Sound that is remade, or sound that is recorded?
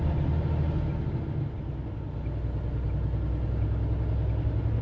recorded